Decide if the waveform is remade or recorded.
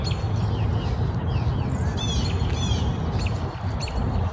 recorded